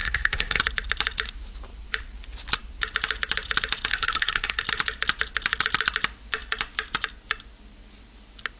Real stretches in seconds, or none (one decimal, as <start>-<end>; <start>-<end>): 0.6-3.9; 4.6-8.6